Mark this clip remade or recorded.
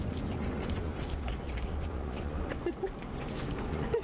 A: remade